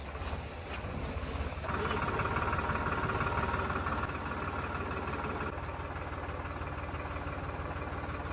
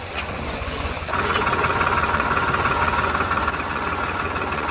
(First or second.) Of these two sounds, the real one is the first